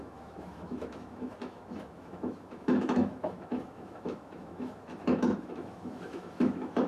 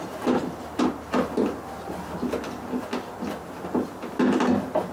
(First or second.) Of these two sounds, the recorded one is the second